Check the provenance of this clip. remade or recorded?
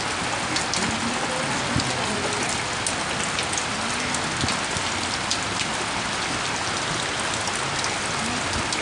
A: recorded